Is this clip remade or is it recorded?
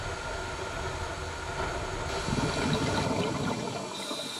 recorded